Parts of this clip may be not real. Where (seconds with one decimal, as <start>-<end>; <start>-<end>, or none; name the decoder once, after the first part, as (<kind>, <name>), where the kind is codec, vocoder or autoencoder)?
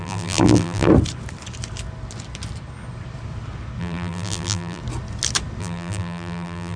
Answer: 0.0-0.9 (vocoder, BigVGAN v2); 3.8-4.8; 5.6-6.8